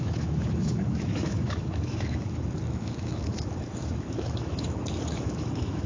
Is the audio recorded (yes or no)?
no